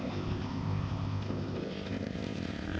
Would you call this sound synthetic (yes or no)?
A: yes